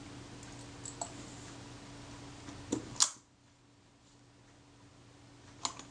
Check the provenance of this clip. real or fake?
real